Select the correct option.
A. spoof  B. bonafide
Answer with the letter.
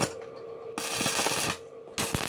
B